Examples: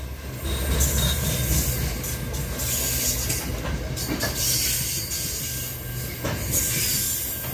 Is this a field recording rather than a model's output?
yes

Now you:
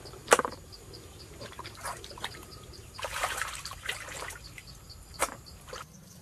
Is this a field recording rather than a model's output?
no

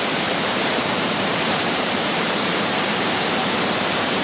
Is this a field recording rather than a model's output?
no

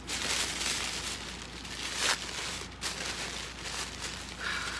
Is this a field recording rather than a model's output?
yes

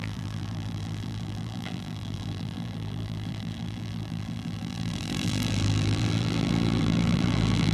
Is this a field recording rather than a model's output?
no